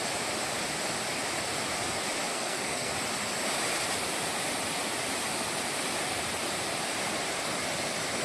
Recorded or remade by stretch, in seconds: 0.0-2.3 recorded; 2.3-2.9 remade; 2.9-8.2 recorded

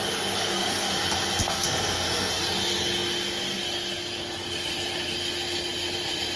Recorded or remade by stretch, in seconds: 0.0-0.4 recorded; 0.4-0.9 remade; 0.9-1.4 recorded; 1.4-2.3 remade; 2.3-6.4 recorded

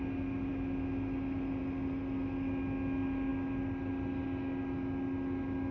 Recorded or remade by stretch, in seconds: 0.0-5.7 recorded